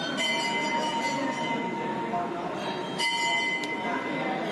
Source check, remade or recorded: recorded